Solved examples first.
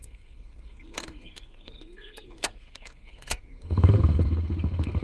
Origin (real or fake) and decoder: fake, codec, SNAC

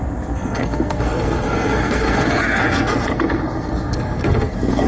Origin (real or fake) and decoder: fake, codec, SNAC